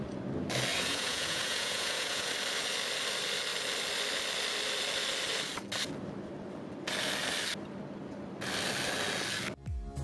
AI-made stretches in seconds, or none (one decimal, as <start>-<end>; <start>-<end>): 0.7-2.3